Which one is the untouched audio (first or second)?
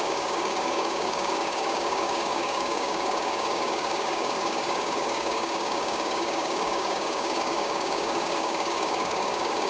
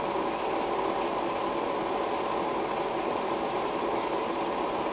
second